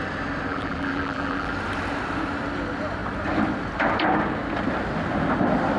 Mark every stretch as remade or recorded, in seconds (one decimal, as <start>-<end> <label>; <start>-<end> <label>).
0.0-0.5 recorded; 0.5-1.5 remade; 1.5-5.8 recorded